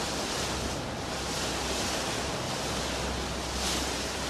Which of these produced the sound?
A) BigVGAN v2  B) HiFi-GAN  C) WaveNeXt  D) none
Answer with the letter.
D